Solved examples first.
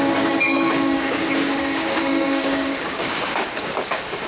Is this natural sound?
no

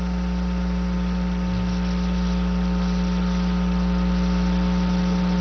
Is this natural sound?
yes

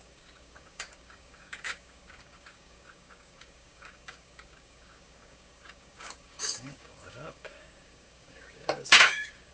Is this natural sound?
no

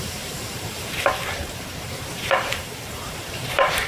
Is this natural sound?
no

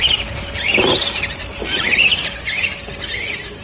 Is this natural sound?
yes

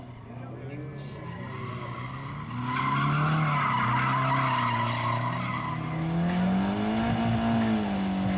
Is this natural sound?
yes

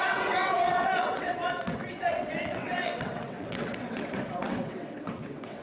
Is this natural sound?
no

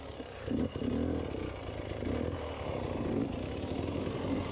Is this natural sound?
yes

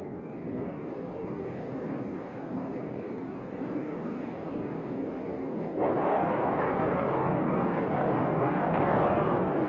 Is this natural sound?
no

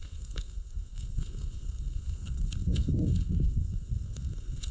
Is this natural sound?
no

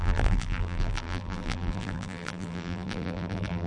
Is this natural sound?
no